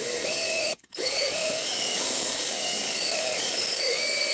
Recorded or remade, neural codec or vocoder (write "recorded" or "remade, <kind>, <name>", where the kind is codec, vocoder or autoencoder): remade, codec, DAC